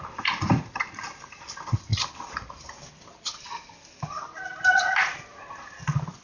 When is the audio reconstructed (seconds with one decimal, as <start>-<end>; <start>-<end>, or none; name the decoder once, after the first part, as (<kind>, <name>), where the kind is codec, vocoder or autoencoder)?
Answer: none